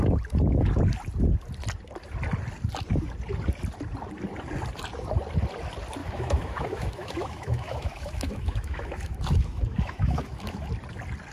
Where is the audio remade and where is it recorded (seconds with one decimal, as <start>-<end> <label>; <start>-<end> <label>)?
0.0-6.0 recorded; 6.0-10.7 remade; 10.7-11.3 recorded